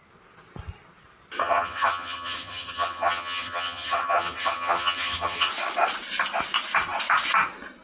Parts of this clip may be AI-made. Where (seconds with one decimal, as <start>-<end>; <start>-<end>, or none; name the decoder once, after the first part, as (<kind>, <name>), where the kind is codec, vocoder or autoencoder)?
1.4-5.5 (vocoder, HiFi-GAN)